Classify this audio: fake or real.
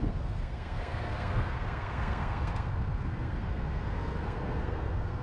fake